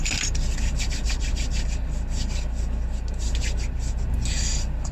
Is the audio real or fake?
real